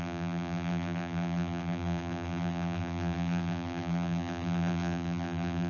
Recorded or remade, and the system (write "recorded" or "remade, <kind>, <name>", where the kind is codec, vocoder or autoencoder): remade, vocoder, BigVGAN v2